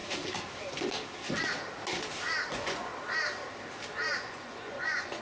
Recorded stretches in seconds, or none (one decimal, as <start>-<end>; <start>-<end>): 0.0-2.5; 2.9-4.2